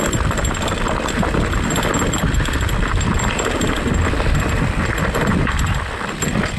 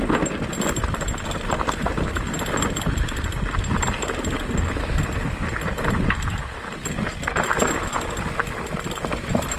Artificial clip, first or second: first